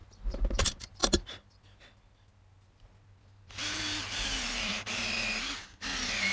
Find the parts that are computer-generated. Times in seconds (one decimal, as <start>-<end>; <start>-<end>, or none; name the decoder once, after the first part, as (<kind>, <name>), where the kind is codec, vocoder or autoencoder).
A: 0.0-0.6 (vocoder, BigVGAN v2); 3.6-5.1